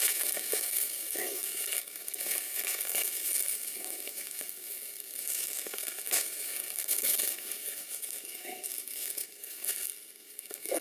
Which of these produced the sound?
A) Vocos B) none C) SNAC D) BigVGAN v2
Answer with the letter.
C